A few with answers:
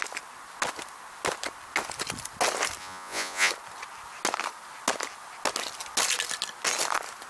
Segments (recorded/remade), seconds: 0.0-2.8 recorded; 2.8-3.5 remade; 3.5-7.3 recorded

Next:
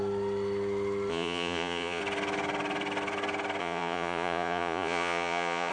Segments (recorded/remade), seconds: 0.0-1.1 recorded; 1.1-2.0 remade; 2.0-3.6 recorded; 3.6-5.7 remade

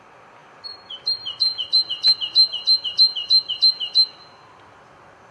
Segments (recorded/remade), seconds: 0.0-5.3 recorded

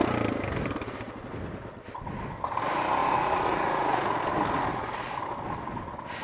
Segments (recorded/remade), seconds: 0.0-3.0 recorded; 3.0-4.2 remade; 4.2-4.7 recorded; 4.7-5.2 remade; 5.2-6.2 recorded

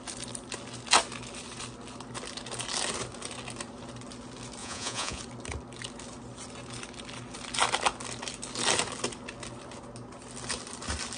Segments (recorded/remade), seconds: 0.0-4.6 recorded; 4.6-5.2 remade; 5.2-11.2 recorded

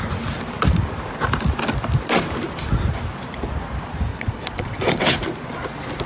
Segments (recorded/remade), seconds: 0.0-4.1 recorded; 4.1-5.0 remade; 5.0-6.1 recorded

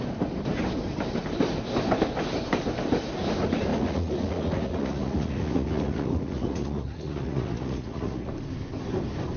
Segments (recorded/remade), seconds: 0.0-3.7 recorded; 3.7-8.3 remade; 8.3-9.4 recorded